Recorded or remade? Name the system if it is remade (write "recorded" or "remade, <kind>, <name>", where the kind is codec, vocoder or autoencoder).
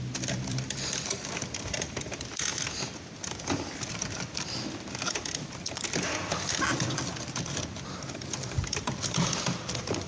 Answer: remade, vocoder, BigVGAN v2